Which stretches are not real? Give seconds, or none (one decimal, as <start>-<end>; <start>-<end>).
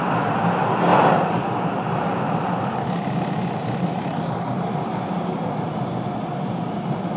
0.9-5.0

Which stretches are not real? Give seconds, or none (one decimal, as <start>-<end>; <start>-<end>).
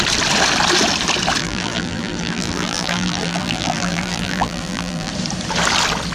1.4-5.1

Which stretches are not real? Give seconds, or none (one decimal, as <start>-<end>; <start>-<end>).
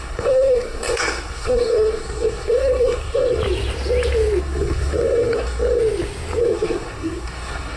0.0-3.4; 4.4-5.8; 6.4-7.8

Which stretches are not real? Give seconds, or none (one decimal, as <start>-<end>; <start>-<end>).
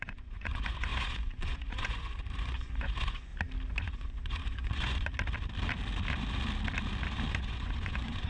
0.0-3.3; 3.8-5.1; 7.3-8.3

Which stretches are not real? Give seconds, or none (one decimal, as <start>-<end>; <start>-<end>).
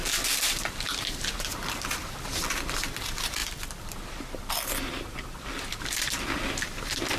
0.0-7.2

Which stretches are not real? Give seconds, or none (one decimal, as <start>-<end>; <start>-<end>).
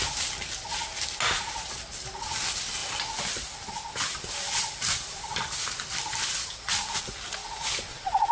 2.8-7.0